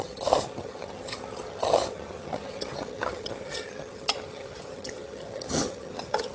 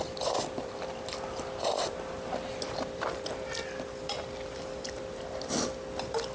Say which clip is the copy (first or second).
first